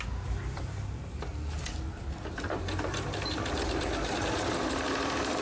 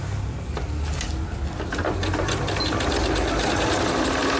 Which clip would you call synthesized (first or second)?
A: first